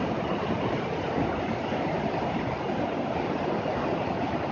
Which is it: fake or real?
real